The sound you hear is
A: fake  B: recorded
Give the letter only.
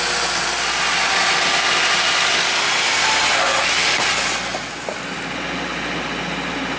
B